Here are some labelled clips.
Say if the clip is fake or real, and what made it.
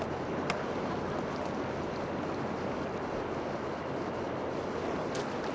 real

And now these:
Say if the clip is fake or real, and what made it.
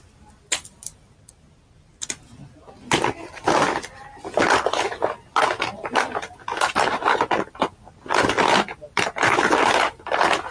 real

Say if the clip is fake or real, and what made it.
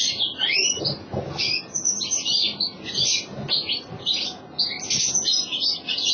real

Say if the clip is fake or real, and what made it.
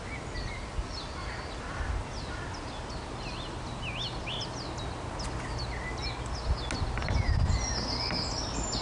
real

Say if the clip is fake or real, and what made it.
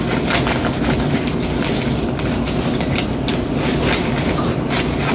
real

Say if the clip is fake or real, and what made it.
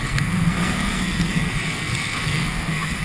fake, codec, SNAC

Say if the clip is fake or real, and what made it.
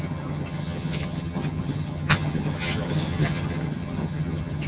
fake, vocoder, HiFi-GAN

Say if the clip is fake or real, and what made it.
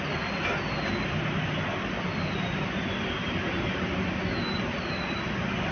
real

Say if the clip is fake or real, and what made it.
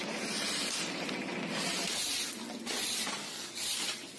real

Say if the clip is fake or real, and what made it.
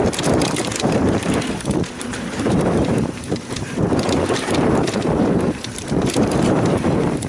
fake, vocoder, BigVGAN v2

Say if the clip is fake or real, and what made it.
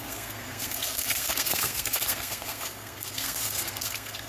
fake, codec, SNAC